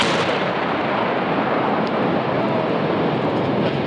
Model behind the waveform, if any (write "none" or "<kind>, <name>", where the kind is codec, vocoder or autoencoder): none